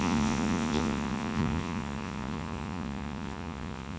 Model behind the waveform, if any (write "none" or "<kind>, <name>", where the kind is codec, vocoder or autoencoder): vocoder, Vocos